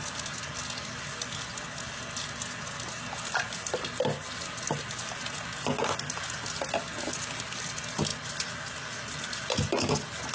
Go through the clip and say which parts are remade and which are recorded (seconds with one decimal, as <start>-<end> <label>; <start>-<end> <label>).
0.0-10.3 recorded